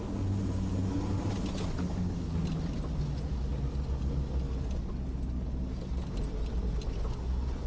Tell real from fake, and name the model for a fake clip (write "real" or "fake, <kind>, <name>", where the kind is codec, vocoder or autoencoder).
real